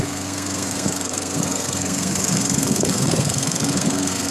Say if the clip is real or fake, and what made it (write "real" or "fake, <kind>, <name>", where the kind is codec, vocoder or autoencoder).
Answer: fake, codec, SNAC